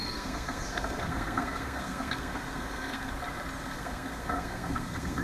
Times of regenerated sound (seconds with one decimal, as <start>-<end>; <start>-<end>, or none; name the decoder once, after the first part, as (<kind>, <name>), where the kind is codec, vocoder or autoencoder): 0.0-3.1 (codec, SNAC); 3.6-5.2